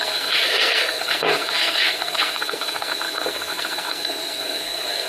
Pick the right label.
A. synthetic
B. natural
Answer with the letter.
A